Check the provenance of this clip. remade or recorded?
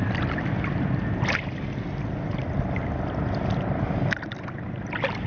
recorded